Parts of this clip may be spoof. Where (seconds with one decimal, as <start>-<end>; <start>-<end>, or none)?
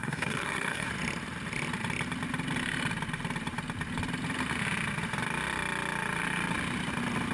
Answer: 0.0-0.9